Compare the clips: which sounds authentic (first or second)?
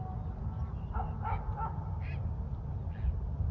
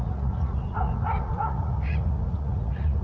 first